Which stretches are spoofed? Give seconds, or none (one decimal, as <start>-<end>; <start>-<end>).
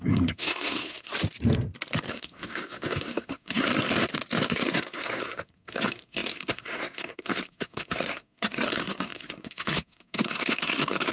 0.0-1.1; 2.1-3.7; 4.5-11.1